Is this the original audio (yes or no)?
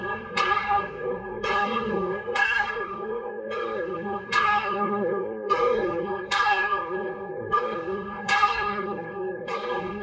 no